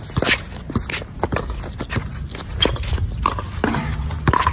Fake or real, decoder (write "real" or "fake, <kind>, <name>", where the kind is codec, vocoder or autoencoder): real